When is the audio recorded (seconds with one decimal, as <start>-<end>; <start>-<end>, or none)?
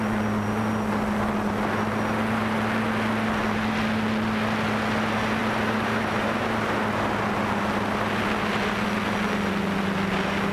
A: 0.0-5.4; 7.2-10.5